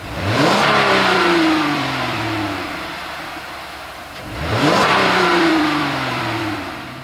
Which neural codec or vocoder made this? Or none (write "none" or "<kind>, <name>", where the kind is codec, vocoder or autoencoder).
vocoder, BigVGAN v2